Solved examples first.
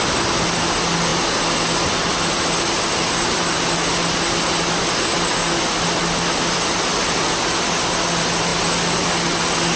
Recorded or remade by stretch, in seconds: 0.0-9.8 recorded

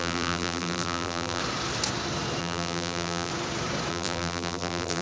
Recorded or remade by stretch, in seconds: 0.0-1.4 remade; 1.4-2.4 recorded; 2.4-3.3 remade; 3.3-3.9 recorded; 3.9-5.0 remade

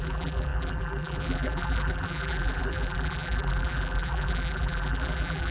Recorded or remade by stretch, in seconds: 0.0-5.5 remade

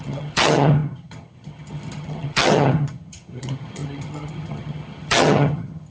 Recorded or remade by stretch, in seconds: 0.0-5.9 remade

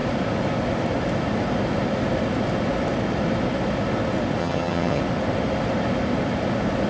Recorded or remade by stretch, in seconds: 0.0-4.4 recorded; 4.4-5.0 remade; 5.0-6.9 recorded

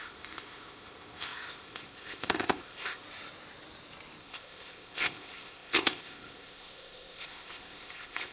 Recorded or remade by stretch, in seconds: 0.0-3.0 remade; 3.0-4.2 recorded; 4.2-8.3 remade

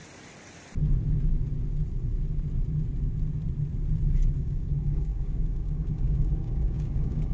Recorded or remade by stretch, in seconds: 0.0-4.4 recorded; 4.4-7.3 remade